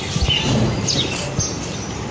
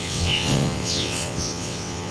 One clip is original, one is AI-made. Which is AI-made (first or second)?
second